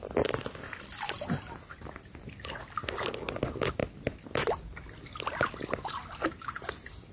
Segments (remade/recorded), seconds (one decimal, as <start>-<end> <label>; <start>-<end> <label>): 0.0-7.1 recorded